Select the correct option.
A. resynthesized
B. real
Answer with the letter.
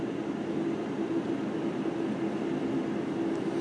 B